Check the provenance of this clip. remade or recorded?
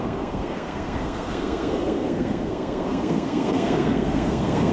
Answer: remade